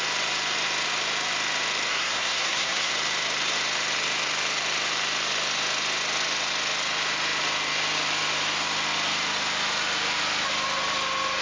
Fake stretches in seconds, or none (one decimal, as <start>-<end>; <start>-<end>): 1.9-2.9

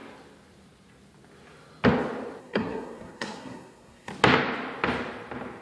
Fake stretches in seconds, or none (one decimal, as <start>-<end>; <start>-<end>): 2.4-4.1

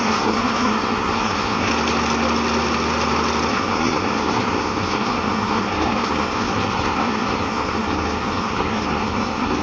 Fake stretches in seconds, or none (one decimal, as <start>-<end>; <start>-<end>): 0.0-1.7; 3.5-9.6

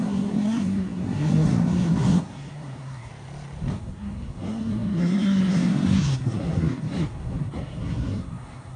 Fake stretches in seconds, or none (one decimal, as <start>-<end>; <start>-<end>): 0.0-3.1; 3.7-8.8

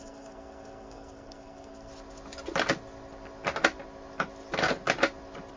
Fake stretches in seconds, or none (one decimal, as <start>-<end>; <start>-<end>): 0.0-1.9

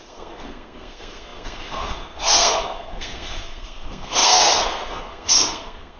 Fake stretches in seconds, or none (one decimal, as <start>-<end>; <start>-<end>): 0.0-6.0

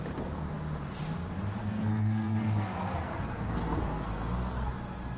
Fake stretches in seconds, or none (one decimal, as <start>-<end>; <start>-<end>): 1.6-4.7

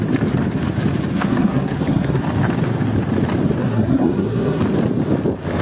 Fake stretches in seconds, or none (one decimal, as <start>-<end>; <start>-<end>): 1.1-2.2; 3.6-4.6